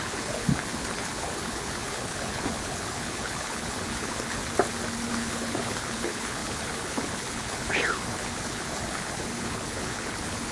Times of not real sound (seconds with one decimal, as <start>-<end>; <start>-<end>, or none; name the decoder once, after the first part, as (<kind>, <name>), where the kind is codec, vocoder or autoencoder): 0.0-4.4 (codec, HILCodec); 5.1-10.5